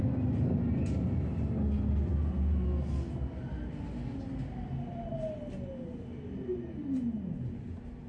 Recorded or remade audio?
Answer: recorded